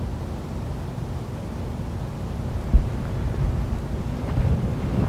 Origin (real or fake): real